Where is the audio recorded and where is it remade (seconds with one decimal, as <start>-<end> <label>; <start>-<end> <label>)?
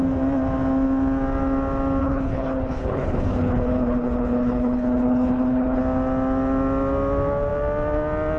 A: 0.0-2.0 recorded; 2.0-5.8 remade; 5.8-8.4 recorded